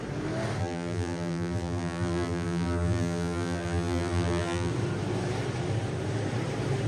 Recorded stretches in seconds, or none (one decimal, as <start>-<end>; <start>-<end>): 0.0-0.6; 4.7-6.9